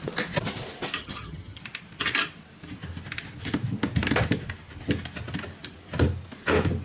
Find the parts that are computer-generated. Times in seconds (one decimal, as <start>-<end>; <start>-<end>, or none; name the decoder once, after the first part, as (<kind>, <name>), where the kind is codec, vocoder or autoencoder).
1.0-1.6 (vocoder, HiFi-GAN)